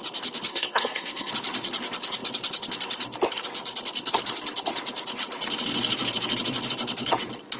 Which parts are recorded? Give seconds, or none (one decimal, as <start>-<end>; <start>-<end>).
0.0-0.5; 1.3-7.6